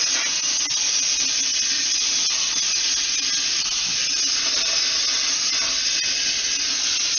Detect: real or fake real